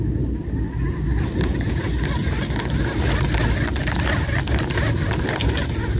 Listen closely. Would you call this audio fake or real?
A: real